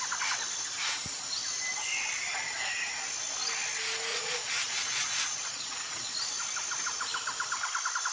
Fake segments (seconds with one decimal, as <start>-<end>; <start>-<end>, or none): 4.1-6.1